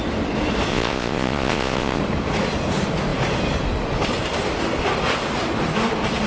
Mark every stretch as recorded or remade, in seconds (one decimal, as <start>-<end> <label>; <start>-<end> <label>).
0.0-0.7 recorded; 0.7-2.0 remade; 2.0-6.3 recorded